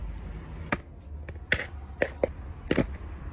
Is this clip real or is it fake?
real